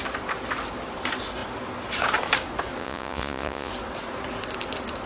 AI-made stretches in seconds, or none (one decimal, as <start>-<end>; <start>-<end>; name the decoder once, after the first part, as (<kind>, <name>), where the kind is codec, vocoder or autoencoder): 2.8-3.7 (vocoder, Vocos)